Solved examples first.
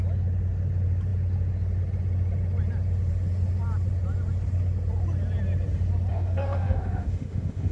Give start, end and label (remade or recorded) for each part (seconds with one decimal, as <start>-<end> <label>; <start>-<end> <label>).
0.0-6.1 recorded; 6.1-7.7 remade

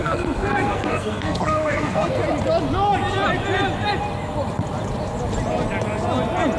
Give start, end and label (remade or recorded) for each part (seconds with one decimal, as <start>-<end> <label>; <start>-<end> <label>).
0.0-2.2 remade; 2.2-6.6 recorded

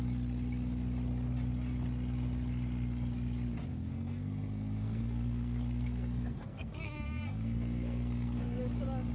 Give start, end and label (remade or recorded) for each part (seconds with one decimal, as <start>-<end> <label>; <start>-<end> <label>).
0.0-3.7 recorded; 3.7-8.6 remade; 8.6-9.1 recorded

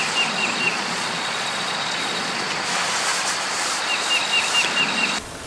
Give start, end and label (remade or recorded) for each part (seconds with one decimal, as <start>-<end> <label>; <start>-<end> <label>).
0.0-0.6 recorded; 0.6-2.5 remade; 2.5-5.5 recorded

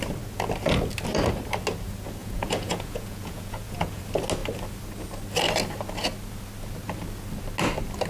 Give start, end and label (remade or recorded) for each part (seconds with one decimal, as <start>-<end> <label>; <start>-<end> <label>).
0.0-2.2 recorded; 2.2-4.0 remade; 4.0-8.1 recorded

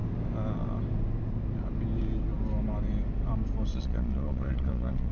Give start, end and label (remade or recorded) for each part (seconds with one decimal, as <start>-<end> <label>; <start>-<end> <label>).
0.0-3.7 recorded; 3.7-5.1 remade